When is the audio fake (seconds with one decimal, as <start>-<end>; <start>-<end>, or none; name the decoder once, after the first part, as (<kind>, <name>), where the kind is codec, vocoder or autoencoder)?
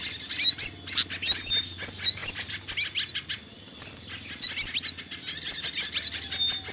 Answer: none